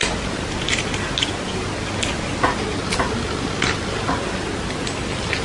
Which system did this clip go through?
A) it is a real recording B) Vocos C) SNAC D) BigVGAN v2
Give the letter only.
A